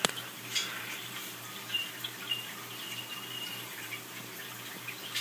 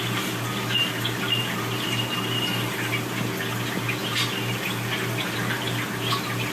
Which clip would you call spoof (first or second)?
first